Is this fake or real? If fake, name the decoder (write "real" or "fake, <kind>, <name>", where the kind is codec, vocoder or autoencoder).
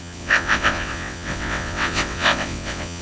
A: fake, vocoder, WaveNeXt